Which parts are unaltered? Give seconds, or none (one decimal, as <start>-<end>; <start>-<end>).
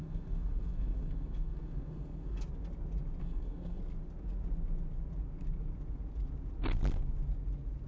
2.4-3.2; 3.8-7.9